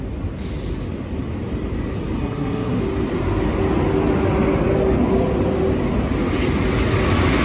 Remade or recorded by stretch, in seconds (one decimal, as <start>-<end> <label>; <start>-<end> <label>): 0.0-2.2 recorded; 2.2-2.8 remade; 2.8-7.4 recorded